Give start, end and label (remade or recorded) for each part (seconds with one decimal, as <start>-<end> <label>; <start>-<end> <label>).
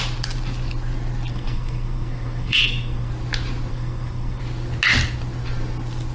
0.0-1.3 recorded; 1.3-3.1 remade; 3.1-3.7 recorded; 3.7-4.4 remade; 4.4-6.1 recorded